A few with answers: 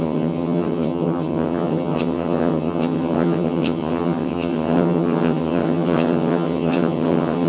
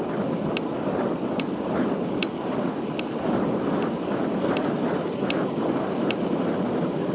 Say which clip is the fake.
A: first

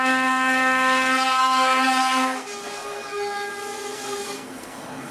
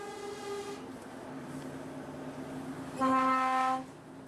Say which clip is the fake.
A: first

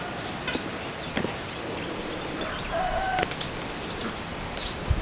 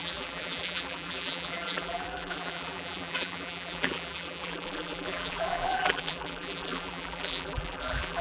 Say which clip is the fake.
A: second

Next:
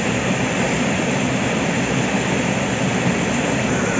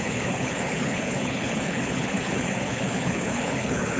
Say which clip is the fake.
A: second